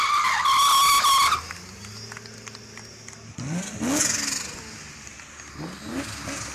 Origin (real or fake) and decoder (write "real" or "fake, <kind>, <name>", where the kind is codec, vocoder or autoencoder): real